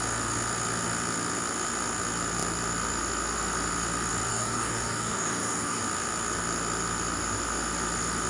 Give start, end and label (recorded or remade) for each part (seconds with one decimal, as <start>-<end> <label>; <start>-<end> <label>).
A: 0.0-4.3 recorded; 4.3-5.8 remade; 5.8-8.3 recorded